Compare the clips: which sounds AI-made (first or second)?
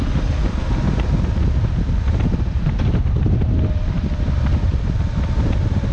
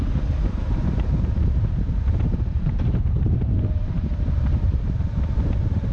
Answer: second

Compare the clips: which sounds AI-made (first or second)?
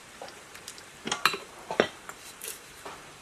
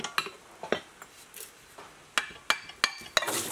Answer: first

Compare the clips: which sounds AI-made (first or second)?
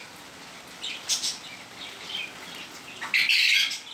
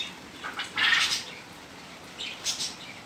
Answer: second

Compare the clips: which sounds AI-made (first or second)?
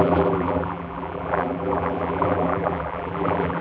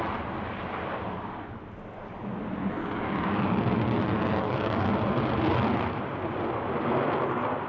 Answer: first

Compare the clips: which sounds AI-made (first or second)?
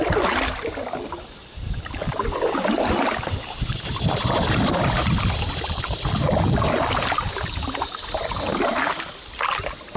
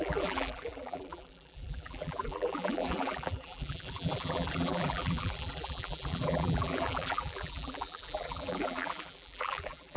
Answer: second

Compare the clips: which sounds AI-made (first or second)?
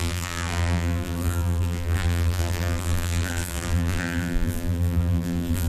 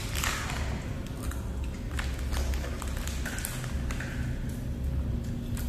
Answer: first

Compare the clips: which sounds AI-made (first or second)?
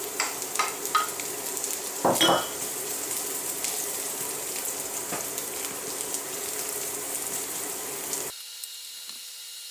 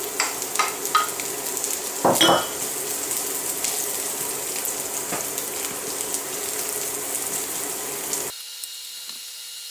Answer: first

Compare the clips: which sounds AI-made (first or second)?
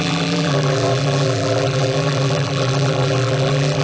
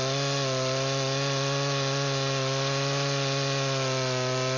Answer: first